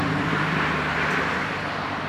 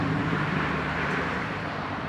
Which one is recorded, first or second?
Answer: first